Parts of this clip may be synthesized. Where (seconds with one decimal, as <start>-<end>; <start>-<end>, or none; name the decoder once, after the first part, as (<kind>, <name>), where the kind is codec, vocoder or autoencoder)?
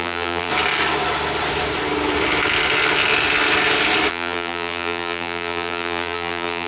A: 0.0-0.5 (vocoder, BigVGAN v2); 4.1-6.7